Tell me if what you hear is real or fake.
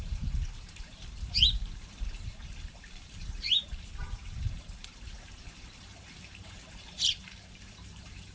fake